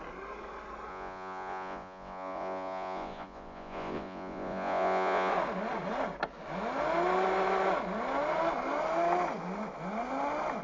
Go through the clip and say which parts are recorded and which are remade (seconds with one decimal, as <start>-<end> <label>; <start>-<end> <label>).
0.0-0.9 recorded; 0.9-5.3 remade; 5.3-10.6 recorded